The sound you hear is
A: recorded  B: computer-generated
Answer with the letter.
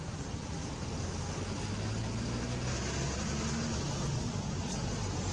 A